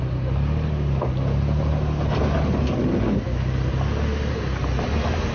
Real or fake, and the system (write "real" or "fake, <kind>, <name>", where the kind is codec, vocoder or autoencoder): real